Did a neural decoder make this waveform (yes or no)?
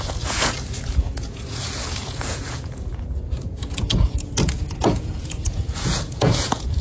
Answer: yes